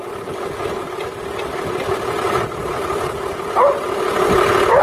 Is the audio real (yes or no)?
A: yes